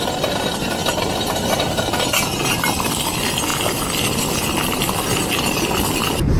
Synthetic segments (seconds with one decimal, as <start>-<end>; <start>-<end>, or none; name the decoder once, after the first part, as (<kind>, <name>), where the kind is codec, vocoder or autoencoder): 0.8-1.8 (vocoder, BigVGAN v2)